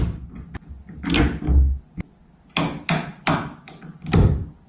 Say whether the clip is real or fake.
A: real